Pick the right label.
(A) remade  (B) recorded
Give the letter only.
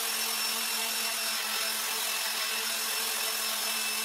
B